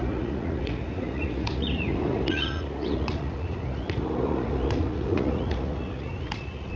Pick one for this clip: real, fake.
fake